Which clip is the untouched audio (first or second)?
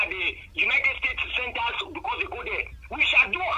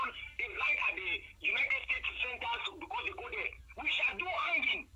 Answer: first